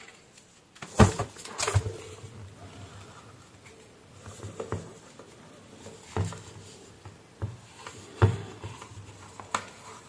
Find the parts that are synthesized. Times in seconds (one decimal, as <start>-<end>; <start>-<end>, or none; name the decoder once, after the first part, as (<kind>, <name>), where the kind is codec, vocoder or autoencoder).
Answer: none